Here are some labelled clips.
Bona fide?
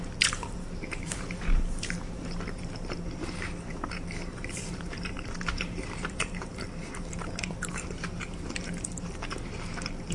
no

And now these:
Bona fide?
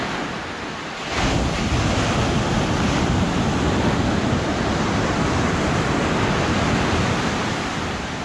yes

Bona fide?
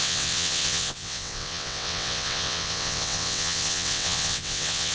no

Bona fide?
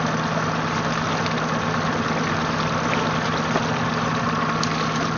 yes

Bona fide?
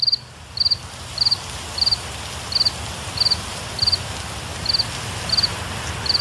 yes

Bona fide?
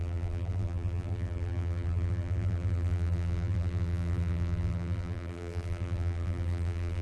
no